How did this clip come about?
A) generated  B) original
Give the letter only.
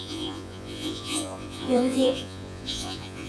A